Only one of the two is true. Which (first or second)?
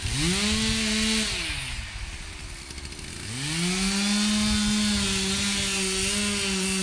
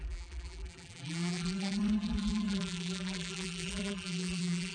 first